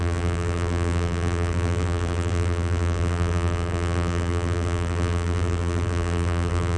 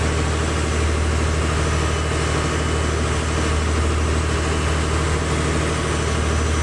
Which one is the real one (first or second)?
second